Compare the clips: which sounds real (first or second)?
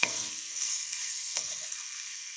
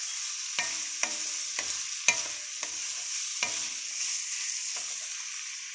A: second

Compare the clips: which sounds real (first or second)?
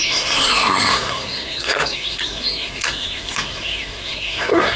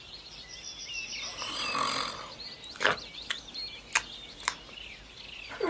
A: second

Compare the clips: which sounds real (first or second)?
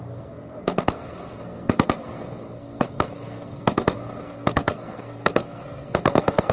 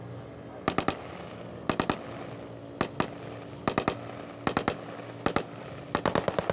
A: second